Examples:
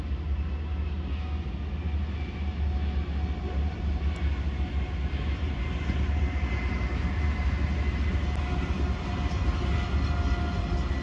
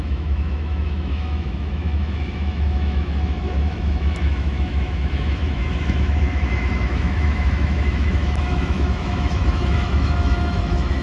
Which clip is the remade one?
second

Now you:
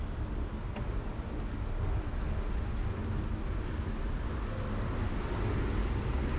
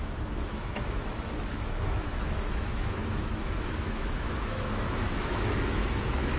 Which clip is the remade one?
second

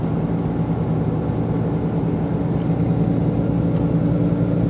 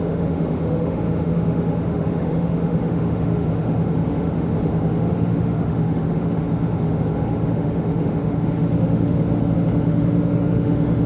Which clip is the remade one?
second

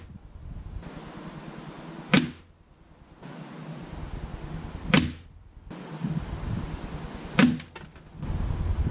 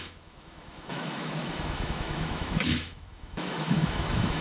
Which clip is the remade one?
second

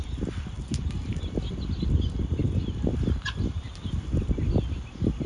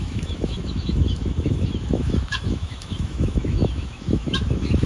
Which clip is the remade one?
second